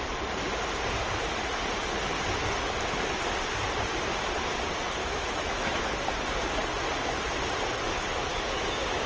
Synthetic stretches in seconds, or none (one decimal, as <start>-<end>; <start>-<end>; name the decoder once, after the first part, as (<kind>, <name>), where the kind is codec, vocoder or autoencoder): 5.0-5.9 (autoencoder, DAC-VAE); 8.3-9.1